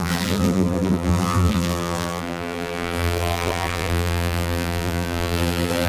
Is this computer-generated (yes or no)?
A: yes